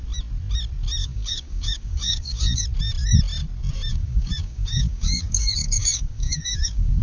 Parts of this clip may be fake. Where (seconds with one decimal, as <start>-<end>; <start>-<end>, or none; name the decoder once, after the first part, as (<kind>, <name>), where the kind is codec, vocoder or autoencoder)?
1.0-2.6 (codec, DAC); 3.9-7.0